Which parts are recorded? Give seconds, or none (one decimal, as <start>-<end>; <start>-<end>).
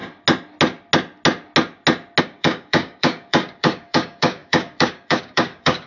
0.0-2.2